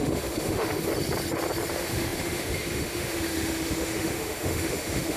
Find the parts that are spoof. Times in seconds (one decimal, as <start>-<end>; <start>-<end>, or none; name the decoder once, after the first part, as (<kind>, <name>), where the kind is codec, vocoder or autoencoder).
0.0-0.9 (autoencoder, DAC-VAE); 1.7-5.2

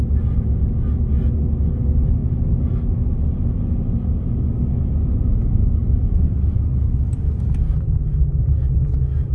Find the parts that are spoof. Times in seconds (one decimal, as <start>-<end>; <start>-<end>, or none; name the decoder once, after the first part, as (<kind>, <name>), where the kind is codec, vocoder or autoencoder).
none

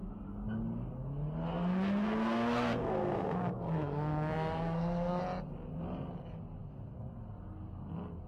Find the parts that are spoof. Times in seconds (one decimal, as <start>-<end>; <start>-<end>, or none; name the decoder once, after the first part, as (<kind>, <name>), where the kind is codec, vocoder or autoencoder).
1.5-5.2 (codec, SNAC)

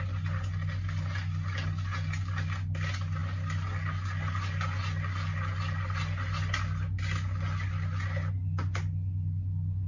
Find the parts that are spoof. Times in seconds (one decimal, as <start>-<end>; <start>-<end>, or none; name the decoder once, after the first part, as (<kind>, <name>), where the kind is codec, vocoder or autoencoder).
none

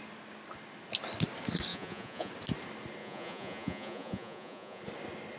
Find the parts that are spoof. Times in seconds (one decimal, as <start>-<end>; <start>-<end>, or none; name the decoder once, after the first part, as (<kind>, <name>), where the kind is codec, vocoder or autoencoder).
1.7-2.3 (vocoder, Vocos); 3.0-4.8

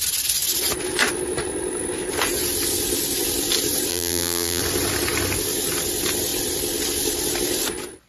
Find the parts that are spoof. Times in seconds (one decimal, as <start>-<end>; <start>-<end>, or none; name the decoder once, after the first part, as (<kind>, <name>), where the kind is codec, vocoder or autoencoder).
3.9-4.6 (vocoder, BigVGAN v2)

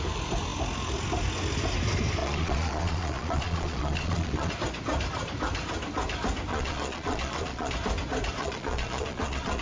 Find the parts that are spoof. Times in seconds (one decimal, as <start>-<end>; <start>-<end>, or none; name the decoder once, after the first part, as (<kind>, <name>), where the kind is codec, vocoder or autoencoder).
2.2-4.5 (vocoder, Vocos); 6.5-7.7; 8.4-9.6

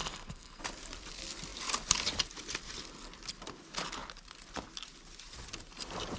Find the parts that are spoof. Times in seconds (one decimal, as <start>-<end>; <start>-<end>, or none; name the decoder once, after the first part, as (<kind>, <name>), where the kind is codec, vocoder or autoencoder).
0.0-0.6 (codec, SNAC)